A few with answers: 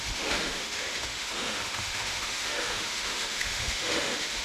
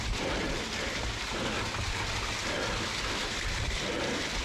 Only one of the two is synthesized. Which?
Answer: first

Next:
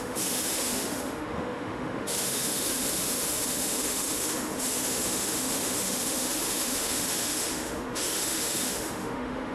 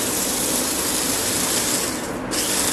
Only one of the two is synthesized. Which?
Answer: first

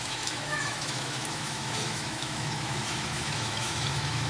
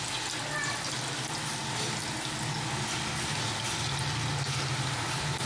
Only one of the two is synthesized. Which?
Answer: first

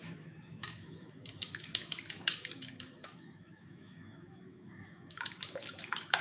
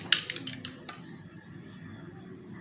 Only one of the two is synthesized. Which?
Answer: first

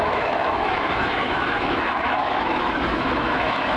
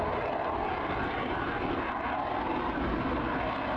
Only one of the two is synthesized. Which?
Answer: first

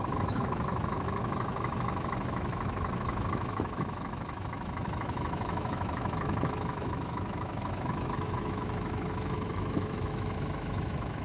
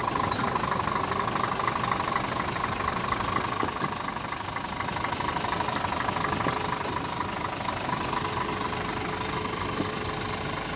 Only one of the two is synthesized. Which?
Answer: first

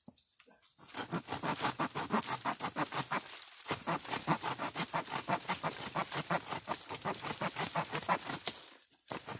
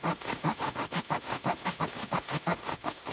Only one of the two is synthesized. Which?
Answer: second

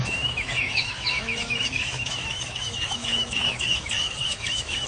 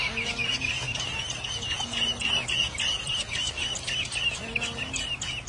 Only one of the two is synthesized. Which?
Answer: first